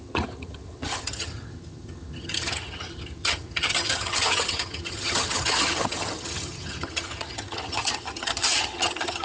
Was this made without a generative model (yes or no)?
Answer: no